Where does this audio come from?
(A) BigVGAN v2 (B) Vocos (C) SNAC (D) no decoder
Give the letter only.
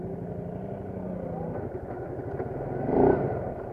D